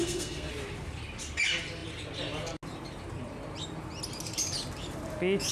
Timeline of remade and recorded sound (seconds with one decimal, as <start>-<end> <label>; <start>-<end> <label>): 0.0-0.5 remade; 0.5-5.5 recorded